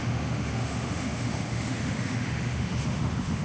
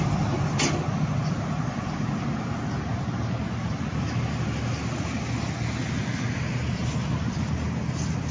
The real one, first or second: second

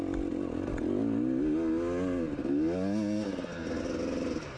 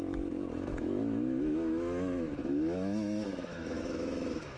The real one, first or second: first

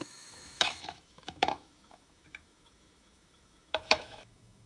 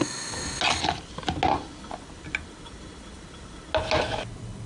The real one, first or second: second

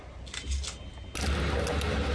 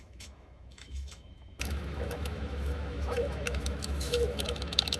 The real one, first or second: first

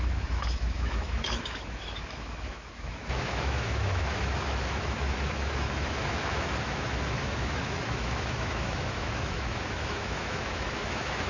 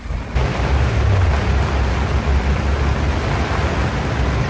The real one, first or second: second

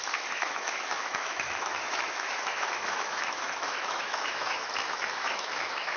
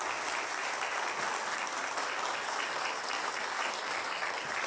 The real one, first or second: second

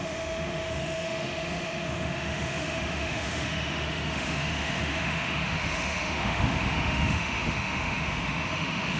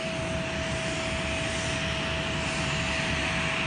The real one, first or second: second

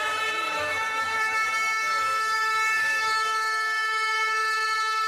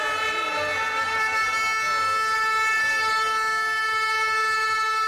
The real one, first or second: second